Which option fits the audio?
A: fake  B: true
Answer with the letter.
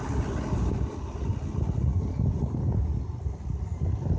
B